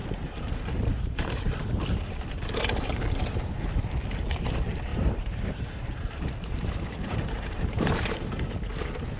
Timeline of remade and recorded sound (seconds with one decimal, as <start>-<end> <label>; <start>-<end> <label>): 0.0-2.2 remade; 2.2-4.9 recorded; 4.9-8.2 remade; 8.2-9.2 recorded